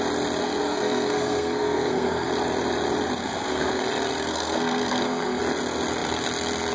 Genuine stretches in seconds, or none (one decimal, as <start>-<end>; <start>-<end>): 0.0-0.4; 2.3-3.2; 3.8-4.3; 5.4-6.7